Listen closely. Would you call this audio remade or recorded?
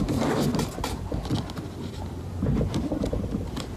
remade